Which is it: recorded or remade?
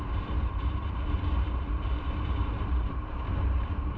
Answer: remade